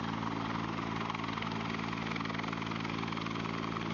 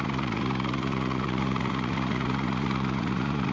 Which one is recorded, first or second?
first